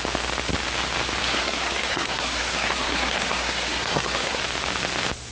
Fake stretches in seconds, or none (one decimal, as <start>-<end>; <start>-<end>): 1.2-4.4